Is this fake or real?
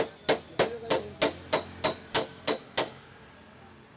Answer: real